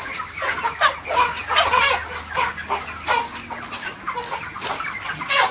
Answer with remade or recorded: recorded